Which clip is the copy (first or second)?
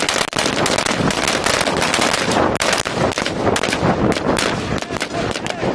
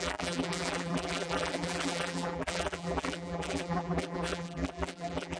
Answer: second